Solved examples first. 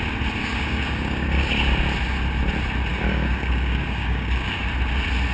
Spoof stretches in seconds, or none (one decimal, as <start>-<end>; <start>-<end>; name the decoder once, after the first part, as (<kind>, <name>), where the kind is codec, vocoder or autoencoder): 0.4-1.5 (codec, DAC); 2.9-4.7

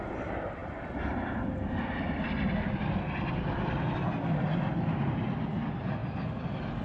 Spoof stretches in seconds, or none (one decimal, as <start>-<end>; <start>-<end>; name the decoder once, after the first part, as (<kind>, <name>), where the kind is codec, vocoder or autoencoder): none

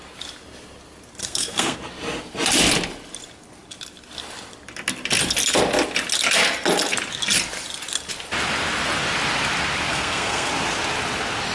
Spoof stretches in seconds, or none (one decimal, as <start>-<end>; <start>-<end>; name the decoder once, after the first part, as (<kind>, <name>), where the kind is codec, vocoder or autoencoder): 1.2-1.8 (codec, SNAC); 9.9-10.5

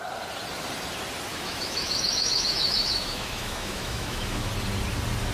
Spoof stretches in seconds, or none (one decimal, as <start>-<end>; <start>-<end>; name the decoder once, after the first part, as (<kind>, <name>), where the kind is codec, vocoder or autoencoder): 1.3-4.5 (autoencoder, DAC-VAE)